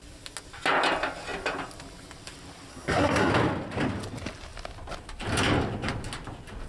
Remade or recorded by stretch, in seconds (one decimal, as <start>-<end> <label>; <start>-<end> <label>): 0.0-2.7 recorded; 2.7-3.3 remade; 3.3-6.7 recorded